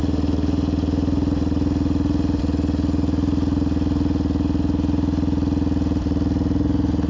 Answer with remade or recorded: recorded